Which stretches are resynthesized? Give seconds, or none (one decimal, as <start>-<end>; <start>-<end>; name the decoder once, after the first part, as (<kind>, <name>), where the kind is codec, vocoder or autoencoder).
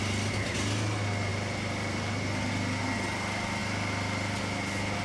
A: 1.3-2.5 (vocoder, BigVGAN v2)